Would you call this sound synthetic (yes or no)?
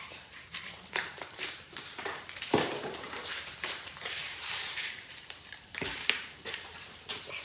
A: yes